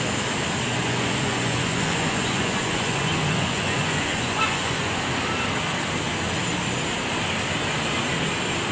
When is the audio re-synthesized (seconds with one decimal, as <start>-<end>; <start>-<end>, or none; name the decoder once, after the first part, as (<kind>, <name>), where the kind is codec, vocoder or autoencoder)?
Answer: 0.7-5.1 (vocoder, Vocos)